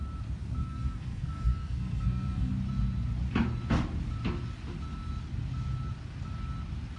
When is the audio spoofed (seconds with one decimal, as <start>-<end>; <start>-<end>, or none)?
0.6-2.5